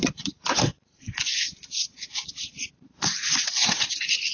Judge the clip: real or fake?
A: fake